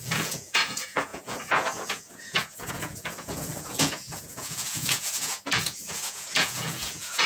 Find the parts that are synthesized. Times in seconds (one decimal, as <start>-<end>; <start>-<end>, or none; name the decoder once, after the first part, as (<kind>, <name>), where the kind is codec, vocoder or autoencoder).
0.0-7.3 (vocoder, Vocos)